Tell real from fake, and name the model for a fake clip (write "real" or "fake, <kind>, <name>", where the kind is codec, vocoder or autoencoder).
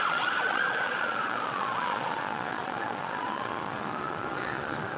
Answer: fake, vocoder, Vocos